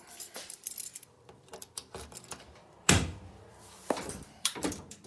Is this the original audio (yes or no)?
no